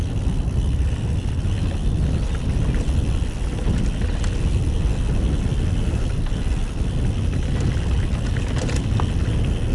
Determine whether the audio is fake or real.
real